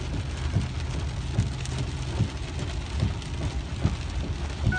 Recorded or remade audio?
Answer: recorded